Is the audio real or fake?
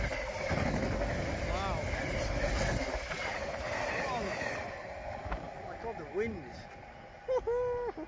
real